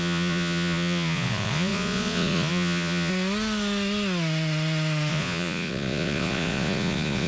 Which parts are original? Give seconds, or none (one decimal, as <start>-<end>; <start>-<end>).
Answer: 3.1-5.1